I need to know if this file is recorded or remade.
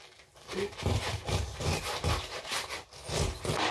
recorded